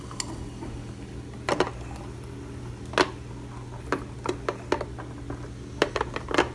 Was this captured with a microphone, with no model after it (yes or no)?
yes